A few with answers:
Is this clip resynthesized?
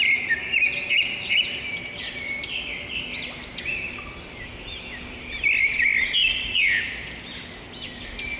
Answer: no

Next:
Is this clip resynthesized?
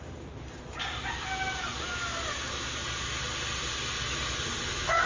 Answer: no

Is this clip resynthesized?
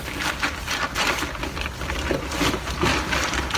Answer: no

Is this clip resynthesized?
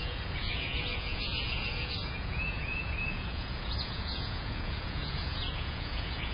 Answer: yes